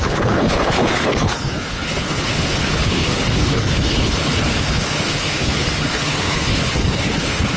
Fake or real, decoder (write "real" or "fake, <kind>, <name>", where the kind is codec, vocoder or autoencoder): fake, codec, HILCodec